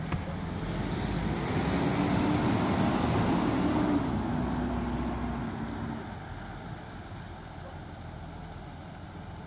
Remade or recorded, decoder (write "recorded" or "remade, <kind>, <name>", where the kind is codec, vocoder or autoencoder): recorded